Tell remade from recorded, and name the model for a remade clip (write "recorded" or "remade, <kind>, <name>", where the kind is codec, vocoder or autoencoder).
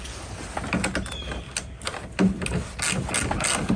recorded